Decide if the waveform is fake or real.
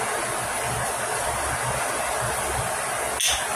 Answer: real